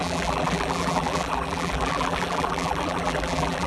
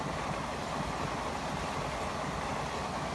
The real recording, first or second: second